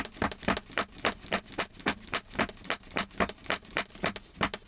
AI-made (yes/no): no